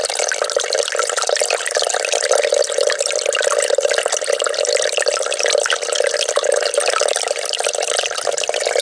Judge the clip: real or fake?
real